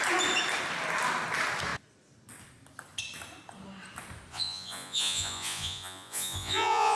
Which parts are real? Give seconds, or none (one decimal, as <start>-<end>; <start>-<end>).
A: 0.0-4.3